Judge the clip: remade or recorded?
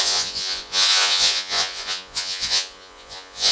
remade